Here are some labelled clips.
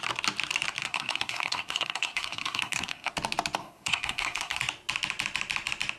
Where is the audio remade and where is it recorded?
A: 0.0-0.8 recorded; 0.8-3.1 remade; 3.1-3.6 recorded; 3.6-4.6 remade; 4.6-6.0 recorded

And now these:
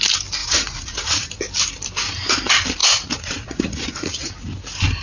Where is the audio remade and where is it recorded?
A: 0.0-0.4 recorded; 0.4-1.3 remade; 1.3-2.8 recorded; 2.8-4.3 remade; 4.3-5.0 recorded

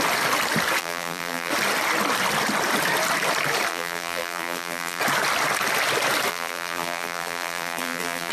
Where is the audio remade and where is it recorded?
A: 0.0-0.8 recorded; 0.8-1.5 remade; 1.5-3.7 recorded; 3.7-5.0 remade; 5.0-6.3 recorded; 6.3-8.3 remade

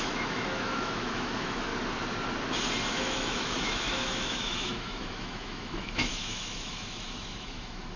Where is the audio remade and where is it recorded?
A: 0.0-1.7 remade; 1.7-2.9 recorded; 2.9-8.0 remade

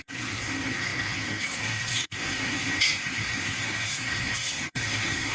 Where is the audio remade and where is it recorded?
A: 0.0-5.3 remade